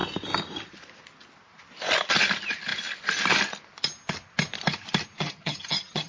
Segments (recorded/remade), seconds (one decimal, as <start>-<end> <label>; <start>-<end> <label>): 0.0-5.2 recorded; 5.2-6.1 remade